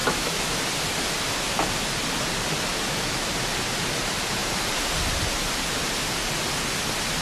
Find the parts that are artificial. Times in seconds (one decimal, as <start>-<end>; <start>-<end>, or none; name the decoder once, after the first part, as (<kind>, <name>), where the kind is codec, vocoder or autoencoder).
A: 0.0-0.6 (autoencoder, DAC-VAE); 2.7-3.3